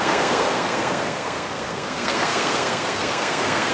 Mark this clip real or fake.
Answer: fake